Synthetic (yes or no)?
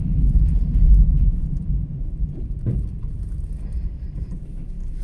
yes